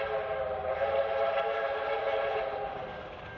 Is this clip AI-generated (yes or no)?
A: no